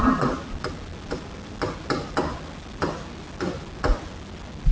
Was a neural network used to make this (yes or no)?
no